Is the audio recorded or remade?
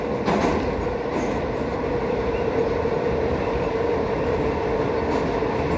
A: recorded